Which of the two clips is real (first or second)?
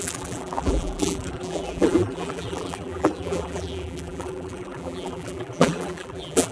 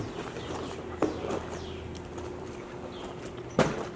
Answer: second